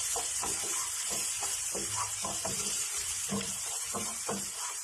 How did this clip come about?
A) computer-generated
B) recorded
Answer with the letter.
A